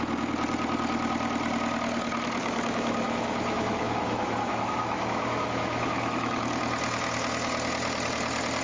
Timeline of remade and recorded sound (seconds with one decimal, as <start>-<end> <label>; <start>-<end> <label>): 0.0-2.4 recorded; 2.4-6.4 remade; 6.4-8.6 recorded